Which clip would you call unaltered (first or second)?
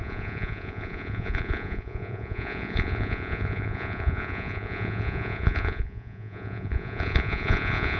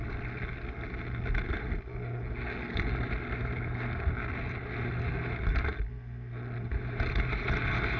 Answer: second